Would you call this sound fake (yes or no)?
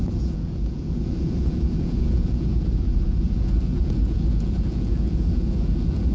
yes